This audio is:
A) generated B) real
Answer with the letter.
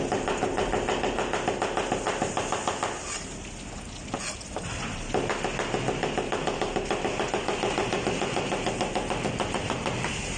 B